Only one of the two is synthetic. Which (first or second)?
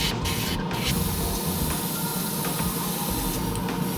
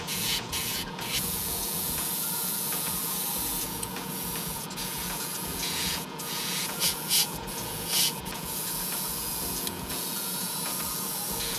second